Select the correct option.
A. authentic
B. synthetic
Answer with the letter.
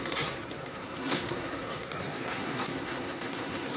B